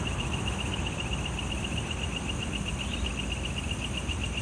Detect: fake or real real